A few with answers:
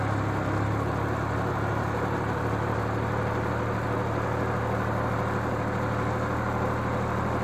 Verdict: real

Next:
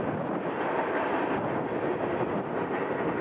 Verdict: real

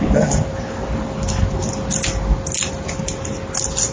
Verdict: real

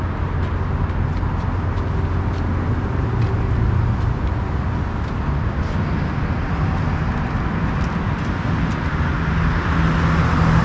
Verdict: real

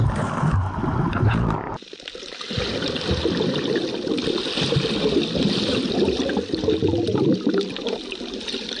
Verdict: real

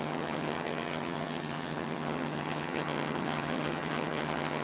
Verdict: fake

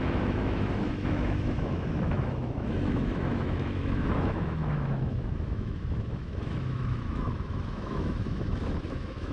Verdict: fake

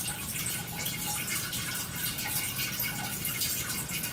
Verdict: real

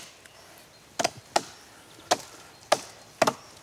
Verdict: real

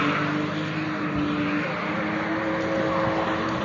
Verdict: real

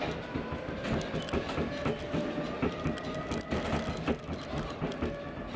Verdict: real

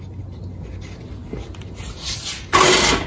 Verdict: real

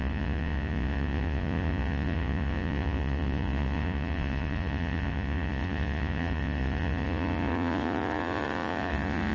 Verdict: fake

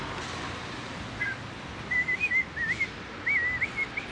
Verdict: real